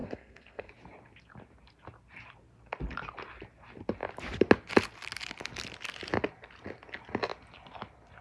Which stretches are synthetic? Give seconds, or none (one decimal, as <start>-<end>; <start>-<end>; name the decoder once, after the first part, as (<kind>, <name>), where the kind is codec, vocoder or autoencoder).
0.0-0.7 (codec, SNAC)